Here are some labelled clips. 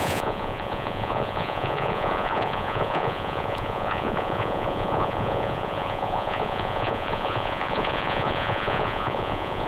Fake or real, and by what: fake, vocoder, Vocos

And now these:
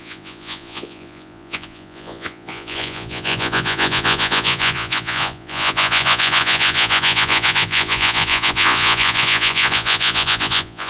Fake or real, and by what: fake, vocoder, Vocos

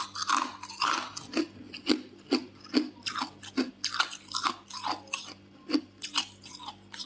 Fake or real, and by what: real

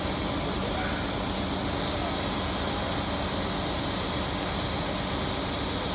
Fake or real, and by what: real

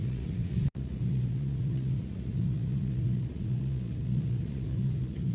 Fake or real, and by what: fake, vocoder, Vocos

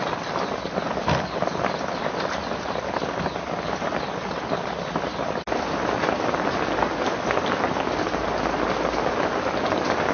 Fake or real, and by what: real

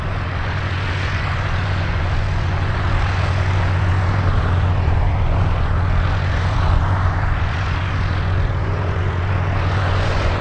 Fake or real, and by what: fake, vocoder, Vocos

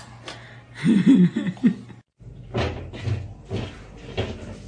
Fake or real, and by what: real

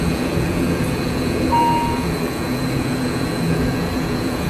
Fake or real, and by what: fake, vocoder, Vocos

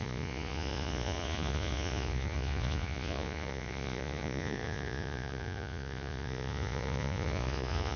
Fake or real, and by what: fake, vocoder, Vocos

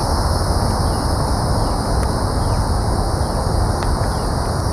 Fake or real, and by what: real